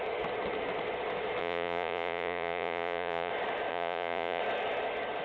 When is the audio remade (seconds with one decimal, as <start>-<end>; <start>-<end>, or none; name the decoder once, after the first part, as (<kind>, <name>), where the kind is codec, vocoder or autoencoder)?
1.4-3.3 (vocoder, Vocos); 3.7-4.4